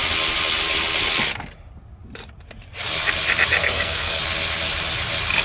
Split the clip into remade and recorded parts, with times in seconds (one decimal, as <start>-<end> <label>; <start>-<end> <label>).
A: 0.0-3.6 recorded; 3.6-4.2 remade; 4.2-5.4 recorded